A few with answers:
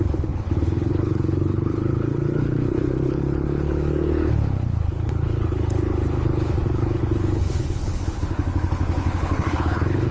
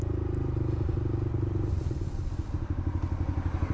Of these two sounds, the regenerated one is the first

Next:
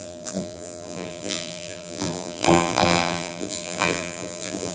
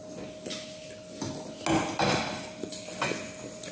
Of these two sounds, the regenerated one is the first